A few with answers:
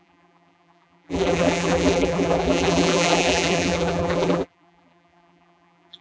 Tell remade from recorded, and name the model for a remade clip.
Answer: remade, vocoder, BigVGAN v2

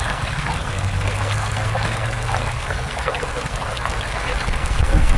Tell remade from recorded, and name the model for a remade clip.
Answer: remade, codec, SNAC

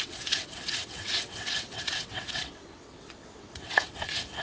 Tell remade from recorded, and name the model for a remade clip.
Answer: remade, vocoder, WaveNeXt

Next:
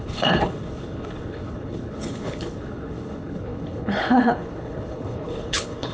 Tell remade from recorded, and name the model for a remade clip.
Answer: remade, codec, HILCodec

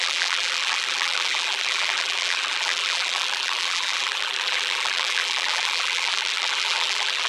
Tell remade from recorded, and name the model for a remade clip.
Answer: remade, vocoder, BigVGAN v2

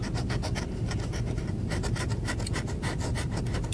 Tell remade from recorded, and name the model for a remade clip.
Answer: remade, vocoder, BigVGAN v2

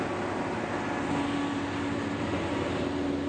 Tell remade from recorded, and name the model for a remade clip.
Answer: recorded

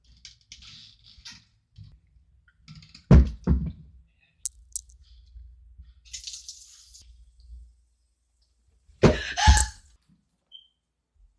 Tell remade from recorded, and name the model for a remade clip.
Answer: recorded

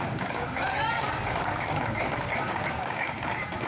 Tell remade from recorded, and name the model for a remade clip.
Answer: remade, codec, DAC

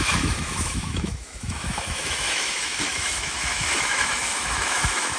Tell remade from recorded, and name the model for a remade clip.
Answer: remade, autoencoder, DAC-VAE